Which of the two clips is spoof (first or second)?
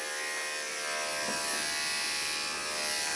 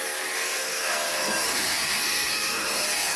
second